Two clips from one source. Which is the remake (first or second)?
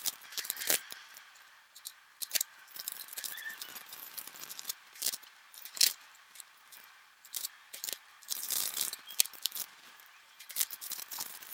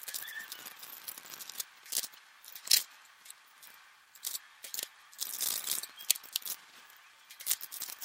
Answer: first